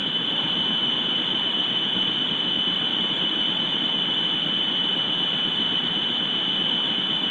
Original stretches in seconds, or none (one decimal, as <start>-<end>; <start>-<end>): 2.3-2.9; 3.8-7.3